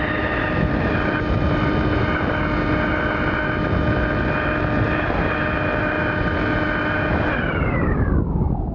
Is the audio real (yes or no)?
yes